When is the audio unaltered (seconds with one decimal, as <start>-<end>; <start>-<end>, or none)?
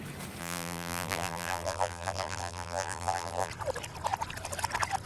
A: 0.0-0.4; 3.5-5.1